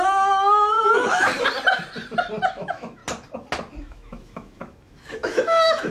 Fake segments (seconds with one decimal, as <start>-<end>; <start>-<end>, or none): 0.0-1.3; 2.5-3.0; 3.8-5.9